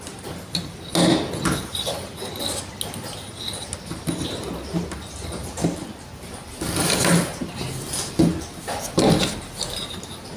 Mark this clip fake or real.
real